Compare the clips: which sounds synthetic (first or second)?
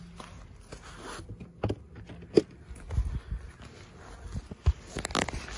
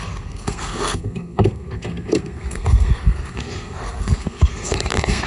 second